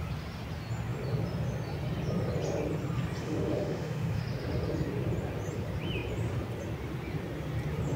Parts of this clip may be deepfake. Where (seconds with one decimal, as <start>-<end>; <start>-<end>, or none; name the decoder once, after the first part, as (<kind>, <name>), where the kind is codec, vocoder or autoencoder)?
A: 3.2-4.2 (autoencoder, DAC-VAE)